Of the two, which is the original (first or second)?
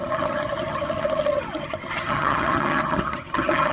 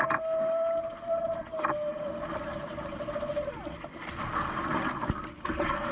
second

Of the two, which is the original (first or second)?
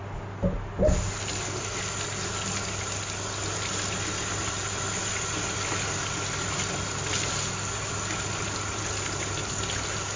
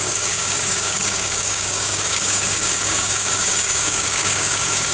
first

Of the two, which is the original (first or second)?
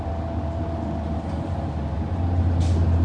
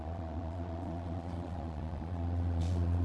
first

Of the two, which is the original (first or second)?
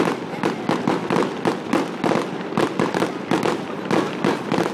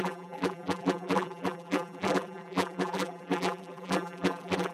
first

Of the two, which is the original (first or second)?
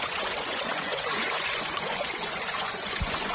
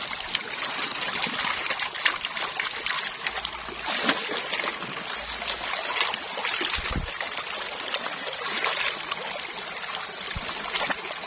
second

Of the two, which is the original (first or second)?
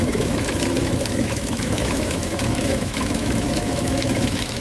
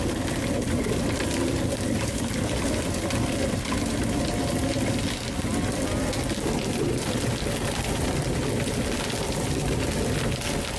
second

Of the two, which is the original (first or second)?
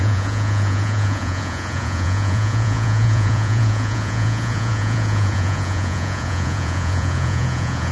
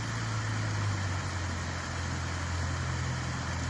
second